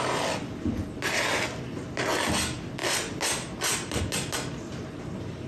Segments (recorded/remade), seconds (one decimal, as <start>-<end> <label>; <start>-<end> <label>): 0.0-5.5 recorded